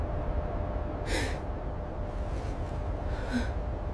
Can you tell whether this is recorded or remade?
recorded